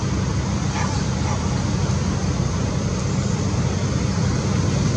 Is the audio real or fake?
real